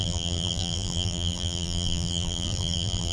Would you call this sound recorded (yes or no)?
no